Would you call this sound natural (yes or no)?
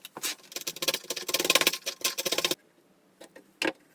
yes